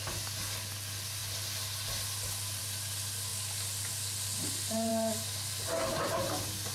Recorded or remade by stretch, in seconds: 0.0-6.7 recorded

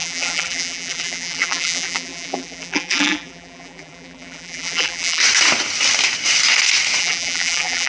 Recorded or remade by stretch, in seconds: 0.0-5.2 remade; 5.2-7.0 recorded; 7.0-7.9 remade

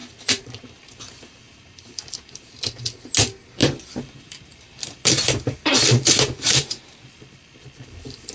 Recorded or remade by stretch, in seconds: 0.0-2.5 remade; 2.5-3.6 recorded; 3.6-7.0 remade; 7.0-8.3 recorded

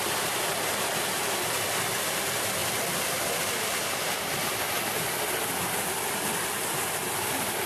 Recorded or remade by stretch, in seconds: 0.0-2.6 recorded; 2.6-4.5 remade; 4.5-7.7 recorded

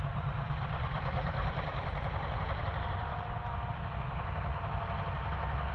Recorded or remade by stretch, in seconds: 0.0-4.5 remade; 4.5-5.7 recorded